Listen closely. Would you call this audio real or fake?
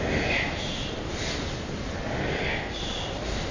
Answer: real